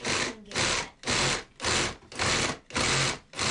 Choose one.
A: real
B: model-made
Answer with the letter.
A